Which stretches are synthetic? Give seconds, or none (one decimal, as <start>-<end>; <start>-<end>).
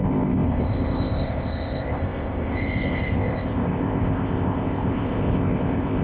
0.0-6.0